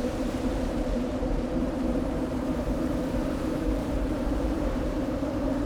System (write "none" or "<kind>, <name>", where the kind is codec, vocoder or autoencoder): vocoder, BigVGAN v2